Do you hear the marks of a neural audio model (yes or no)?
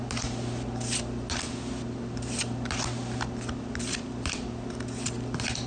no